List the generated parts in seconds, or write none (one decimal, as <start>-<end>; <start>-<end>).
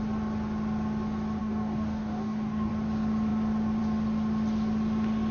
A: 1.4-2.7